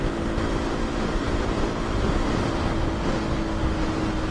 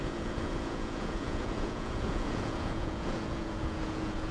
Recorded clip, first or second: first